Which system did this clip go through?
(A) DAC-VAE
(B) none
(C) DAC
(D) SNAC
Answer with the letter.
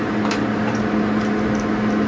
B